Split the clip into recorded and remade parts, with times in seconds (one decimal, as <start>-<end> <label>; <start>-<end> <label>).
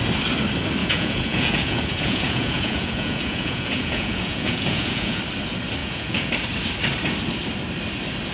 0.0-0.8 recorded; 0.8-5.2 remade; 5.2-5.8 recorded; 5.8-6.3 remade; 6.3-8.3 recorded